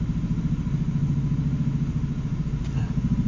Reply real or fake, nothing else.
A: real